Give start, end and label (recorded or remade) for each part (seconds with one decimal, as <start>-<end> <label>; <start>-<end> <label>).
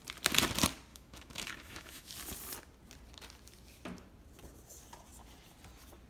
0.0-0.9 recorded; 0.9-2.1 remade; 2.1-6.1 recorded